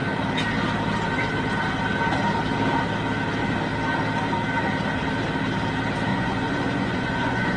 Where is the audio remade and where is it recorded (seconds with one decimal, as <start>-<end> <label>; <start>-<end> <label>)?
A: 0.0-6.1 recorded; 6.1-7.6 remade